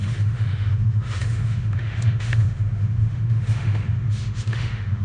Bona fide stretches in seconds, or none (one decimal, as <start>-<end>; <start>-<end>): none

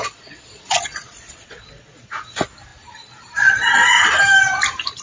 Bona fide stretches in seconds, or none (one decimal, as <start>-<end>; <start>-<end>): 2.1-5.0

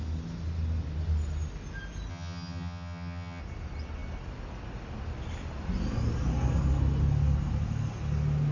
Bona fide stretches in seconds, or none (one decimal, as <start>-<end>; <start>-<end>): 0.0-2.1; 3.4-8.5